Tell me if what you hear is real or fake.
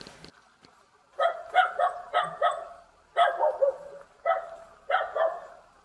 real